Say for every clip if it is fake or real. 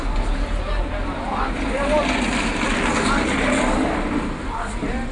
real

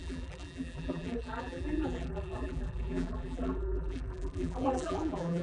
fake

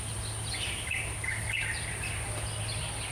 real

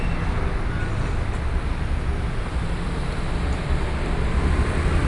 real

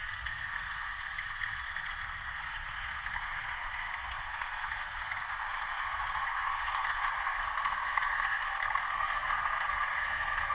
fake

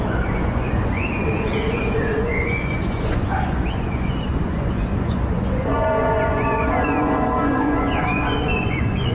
fake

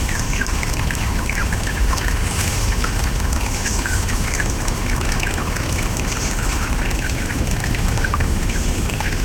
fake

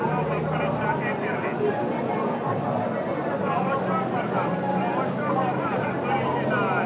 real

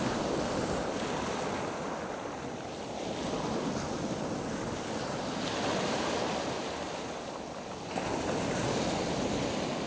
real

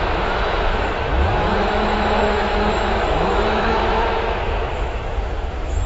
fake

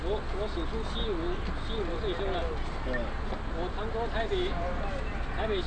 real